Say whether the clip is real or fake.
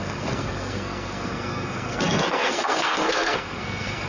fake